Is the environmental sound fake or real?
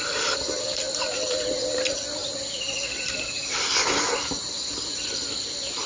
real